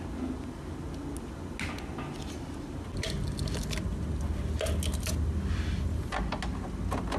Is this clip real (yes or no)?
yes